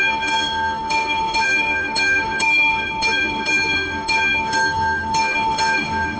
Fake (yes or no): yes